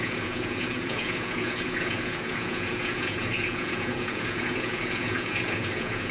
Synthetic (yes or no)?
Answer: yes